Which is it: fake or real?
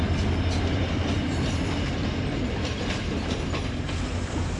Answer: real